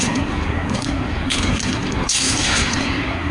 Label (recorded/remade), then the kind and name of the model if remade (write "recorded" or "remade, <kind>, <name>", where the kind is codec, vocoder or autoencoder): remade, codec, SNAC